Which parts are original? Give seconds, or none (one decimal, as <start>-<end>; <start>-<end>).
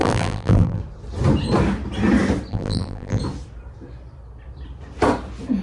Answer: 0.8-2.5; 3.2-5.6